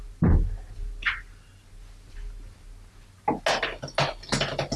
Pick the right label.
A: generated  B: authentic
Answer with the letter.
B